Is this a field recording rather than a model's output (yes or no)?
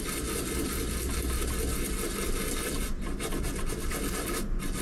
yes